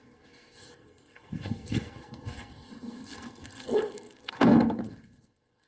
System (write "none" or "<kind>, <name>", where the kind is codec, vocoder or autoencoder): codec, SNAC